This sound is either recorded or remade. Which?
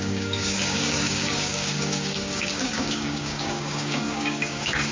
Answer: remade